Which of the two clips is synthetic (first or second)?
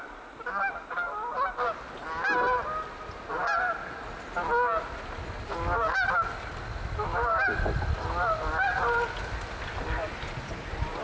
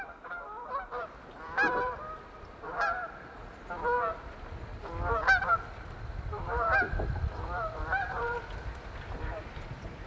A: second